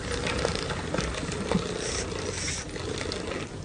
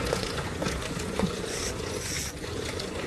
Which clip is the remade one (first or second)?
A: second